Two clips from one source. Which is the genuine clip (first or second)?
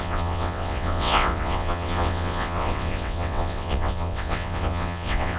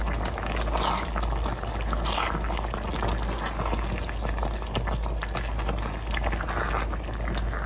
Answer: second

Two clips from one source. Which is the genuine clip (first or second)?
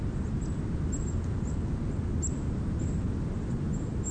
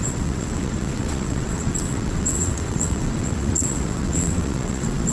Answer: first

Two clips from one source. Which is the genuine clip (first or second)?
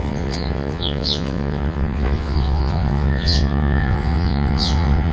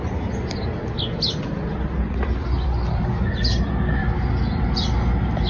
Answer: second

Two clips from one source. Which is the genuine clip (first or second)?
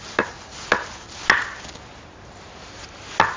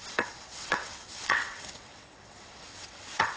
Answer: first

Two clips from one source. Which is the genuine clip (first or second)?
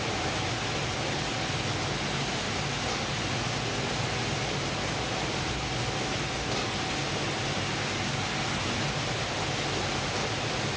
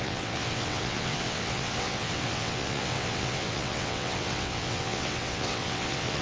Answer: first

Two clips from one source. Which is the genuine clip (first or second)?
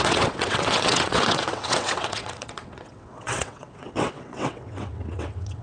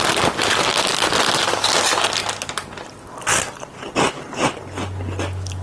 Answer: second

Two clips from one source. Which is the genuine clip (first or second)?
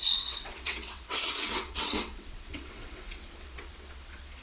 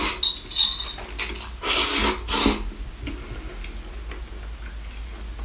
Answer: second